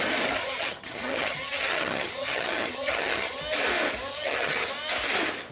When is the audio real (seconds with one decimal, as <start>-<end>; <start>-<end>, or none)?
0.0-0.4; 3.4-4.1; 4.7-5.5